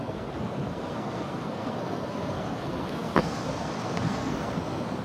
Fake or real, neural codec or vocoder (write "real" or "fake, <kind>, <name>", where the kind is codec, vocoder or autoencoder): fake, codec, SNAC